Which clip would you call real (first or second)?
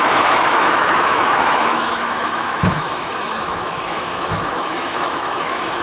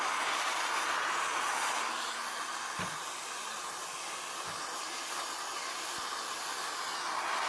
second